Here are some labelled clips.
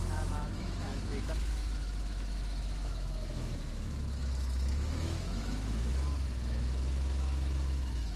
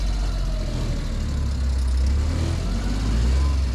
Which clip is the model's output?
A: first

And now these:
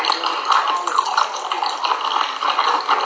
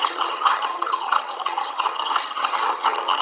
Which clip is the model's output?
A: second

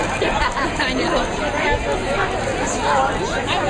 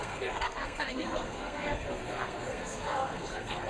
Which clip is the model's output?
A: second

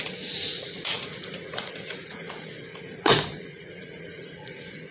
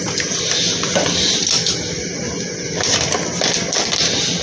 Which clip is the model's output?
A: first